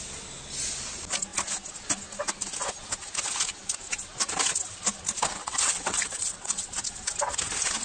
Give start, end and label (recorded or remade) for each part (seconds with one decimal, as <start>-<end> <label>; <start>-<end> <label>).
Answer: 0.0-5.4 recorded; 5.4-6.7 remade; 6.7-7.8 recorded

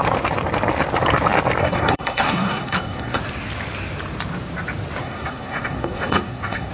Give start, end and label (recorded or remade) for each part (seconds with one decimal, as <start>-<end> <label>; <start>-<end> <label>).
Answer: 0.0-1.6 recorded; 1.6-3.2 remade; 3.2-5.0 recorded; 5.0-6.7 remade

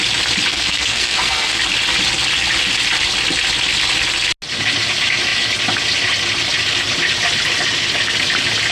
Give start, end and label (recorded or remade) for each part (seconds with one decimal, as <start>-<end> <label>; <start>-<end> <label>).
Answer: 0.0-0.5 recorded; 0.5-1.6 remade; 1.6-8.7 recorded

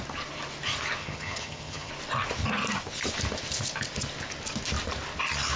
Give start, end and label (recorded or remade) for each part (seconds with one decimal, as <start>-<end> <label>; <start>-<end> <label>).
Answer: 0.0-1.0 recorded; 1.0-1.9 remade; 1.9-5.6 recorded

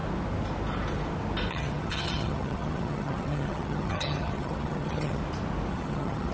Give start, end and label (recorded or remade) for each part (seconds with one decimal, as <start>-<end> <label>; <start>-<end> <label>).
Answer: 0.0-1.5 recorded; 1.5-5.2 remade; 5.2-5.7 recorded; 5.7-6.3 remade